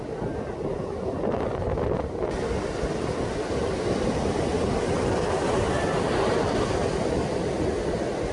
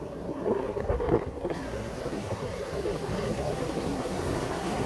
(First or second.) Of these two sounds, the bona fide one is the first